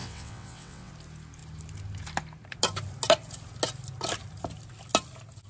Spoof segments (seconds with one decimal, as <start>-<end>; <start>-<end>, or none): 0.0-0.9